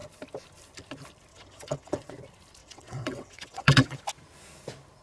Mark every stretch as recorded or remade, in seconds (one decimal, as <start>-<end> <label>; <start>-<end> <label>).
0.0-1.3 recorded; 1.3-2.1 remade; 2.1-2.6 recorded; 2.6-4.0 remade; 4.0-5.0 recorded